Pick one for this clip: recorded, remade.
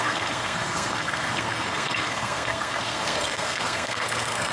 remade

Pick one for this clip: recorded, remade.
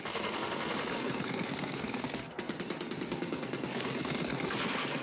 remade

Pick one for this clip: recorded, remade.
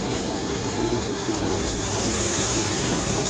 remade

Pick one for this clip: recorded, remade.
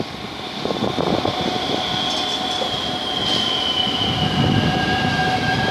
recorded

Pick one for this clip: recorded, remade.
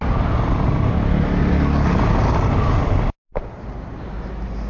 recorded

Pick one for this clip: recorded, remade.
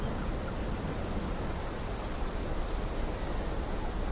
recorded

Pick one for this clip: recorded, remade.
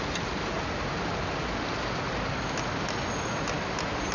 recorded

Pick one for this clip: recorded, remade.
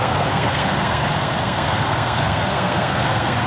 remade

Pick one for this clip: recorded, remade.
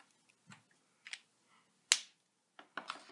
recorded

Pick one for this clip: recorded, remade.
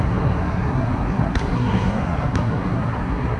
remade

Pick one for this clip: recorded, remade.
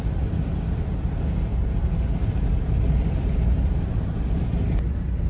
recorded